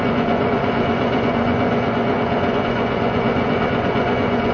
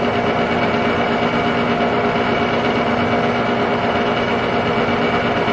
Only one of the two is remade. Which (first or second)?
first